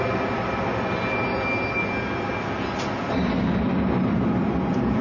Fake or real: real